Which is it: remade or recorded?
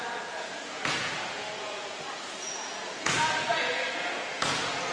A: remade